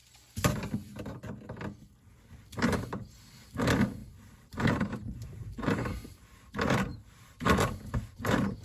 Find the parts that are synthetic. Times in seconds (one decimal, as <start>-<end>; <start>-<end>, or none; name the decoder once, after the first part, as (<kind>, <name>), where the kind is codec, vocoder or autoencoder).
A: 2.8-8.6 (vocoder, BigVGAN v2)